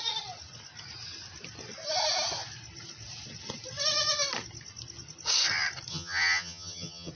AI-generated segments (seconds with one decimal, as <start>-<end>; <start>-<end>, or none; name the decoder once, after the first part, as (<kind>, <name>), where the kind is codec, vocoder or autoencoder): 5.9-7.1 (vocoder, HiFi-GAN)